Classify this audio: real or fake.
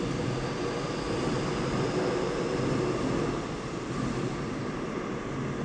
real